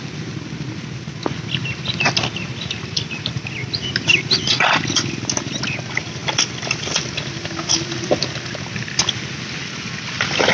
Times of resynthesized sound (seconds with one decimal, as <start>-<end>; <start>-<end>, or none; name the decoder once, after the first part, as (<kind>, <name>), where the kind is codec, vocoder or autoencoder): none